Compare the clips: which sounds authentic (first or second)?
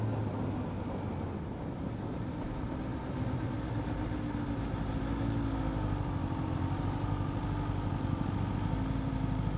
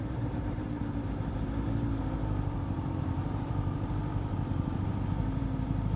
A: first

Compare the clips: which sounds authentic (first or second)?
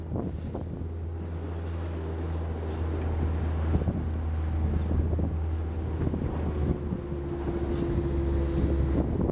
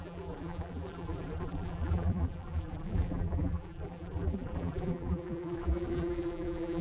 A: first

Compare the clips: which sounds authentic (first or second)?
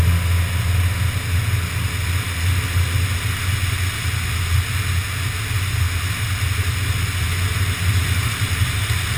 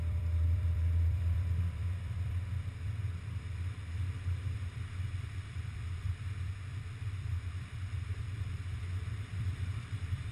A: first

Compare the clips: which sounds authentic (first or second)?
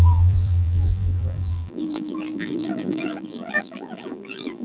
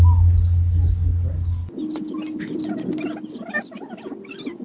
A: second